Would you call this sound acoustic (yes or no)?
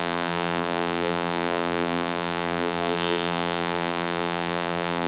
no